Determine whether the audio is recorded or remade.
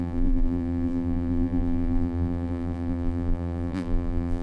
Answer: remade